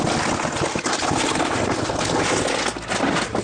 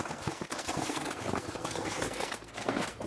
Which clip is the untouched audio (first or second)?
first